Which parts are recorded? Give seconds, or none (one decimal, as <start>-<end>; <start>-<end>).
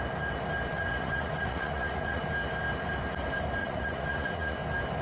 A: 0.0-0.7; 2.2-3.6; 4.6-5.0